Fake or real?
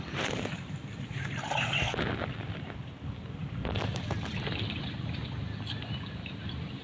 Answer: real